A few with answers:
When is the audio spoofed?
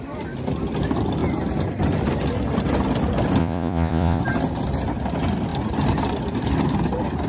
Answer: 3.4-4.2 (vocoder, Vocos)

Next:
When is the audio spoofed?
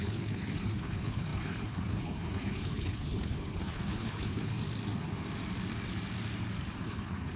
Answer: 0.0-4.5 (codec, HILCodec); 6.8-7.4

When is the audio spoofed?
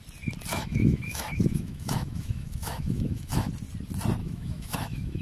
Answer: 0.5-3.5 (autoencoder, DAC-VAE); 4.2-5.2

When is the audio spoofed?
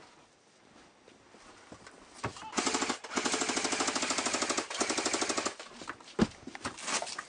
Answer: none